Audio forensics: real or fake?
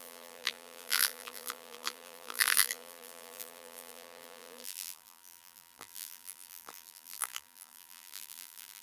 fake